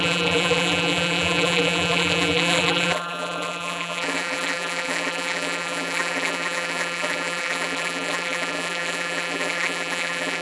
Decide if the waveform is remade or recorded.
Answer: remade